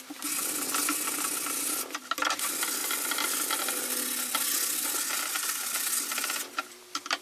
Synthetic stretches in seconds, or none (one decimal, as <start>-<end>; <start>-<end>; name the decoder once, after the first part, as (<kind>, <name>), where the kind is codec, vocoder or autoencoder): none